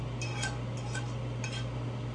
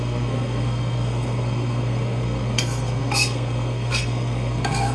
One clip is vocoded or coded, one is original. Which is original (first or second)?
first